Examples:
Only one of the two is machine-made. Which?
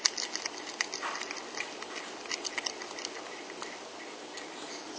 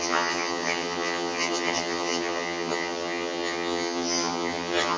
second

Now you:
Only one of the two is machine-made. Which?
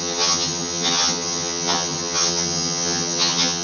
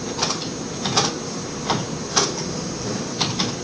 first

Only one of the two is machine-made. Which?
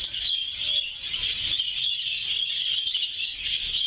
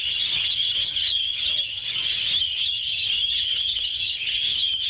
second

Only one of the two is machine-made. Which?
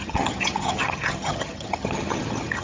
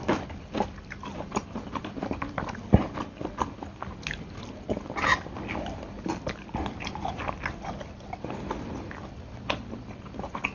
first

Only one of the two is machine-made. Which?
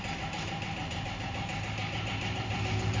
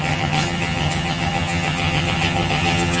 second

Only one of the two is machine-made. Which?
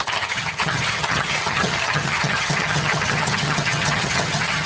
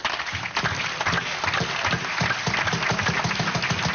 first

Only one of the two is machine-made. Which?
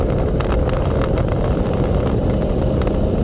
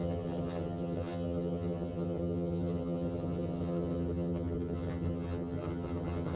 second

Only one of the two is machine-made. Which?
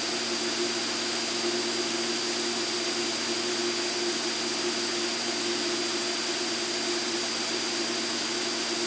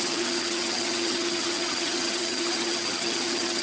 second